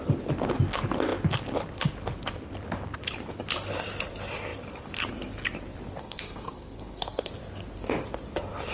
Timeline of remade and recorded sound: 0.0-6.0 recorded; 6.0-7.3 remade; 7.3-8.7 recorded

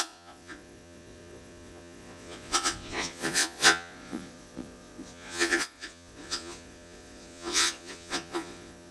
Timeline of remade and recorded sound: 0.0-8.9 remade

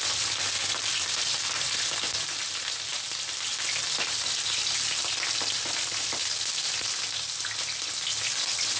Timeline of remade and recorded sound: 0.0-8.8 recorded

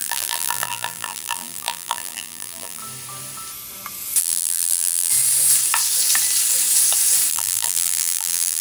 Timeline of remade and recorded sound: 0.0-2.8 remade; 2.8-4.2 recorded; 4.2-5.1 remade; 5.1-7.3 recorded; 7.3-8.6 remade

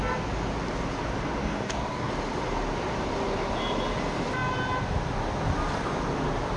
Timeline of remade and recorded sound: 0.0-1.4 recorded; 1.4-2.1 remade; 2.1-6.6 recorded

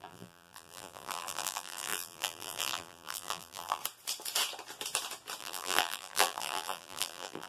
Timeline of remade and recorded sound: 0.0-3.8 remade; 3.8-5.4 recorded; 5.4-7.5 remade